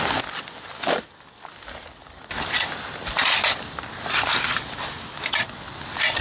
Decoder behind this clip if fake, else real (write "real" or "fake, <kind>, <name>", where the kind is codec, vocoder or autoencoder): real